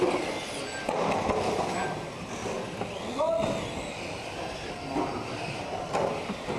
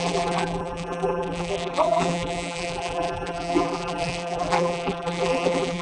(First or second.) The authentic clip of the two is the first